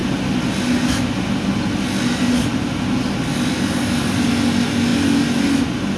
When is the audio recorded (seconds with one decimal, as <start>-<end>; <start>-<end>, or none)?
0.0-6.0